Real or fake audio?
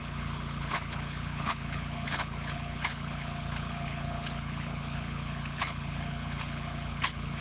fake